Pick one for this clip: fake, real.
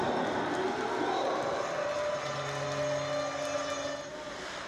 real